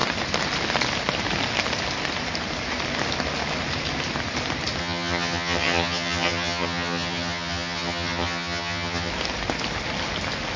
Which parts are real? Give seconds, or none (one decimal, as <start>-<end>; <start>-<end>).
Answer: 0.0-4.8; 9.1-10.6